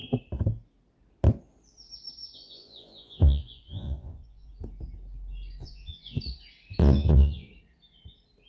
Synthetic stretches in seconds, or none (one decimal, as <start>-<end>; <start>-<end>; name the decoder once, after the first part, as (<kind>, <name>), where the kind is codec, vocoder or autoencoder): 2.2-4.5 (vocoder, Vocos); 5.6-6.2; 6.8-7.5